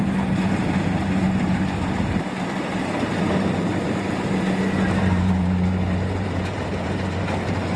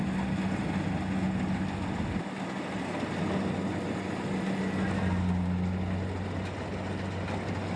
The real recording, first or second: second